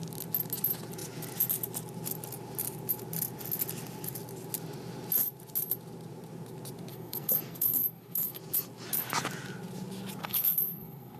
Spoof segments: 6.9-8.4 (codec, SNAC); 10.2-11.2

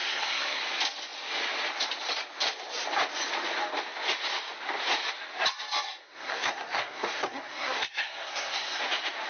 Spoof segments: 0.0-0.6 (codec, SNAC); 6.0-8.8